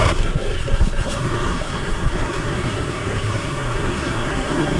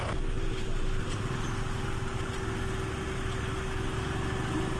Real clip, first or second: second